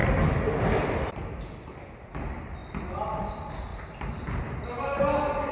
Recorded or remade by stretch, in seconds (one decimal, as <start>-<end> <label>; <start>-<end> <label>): 0.0-1.1 remade; 1.1-5.5 recorded